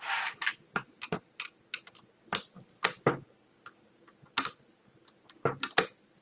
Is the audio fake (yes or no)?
no